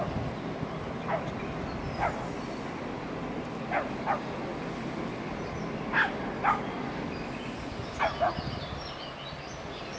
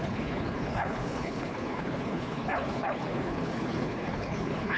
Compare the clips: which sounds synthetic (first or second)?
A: second